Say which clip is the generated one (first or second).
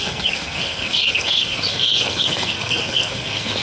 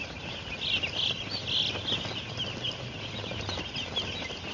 first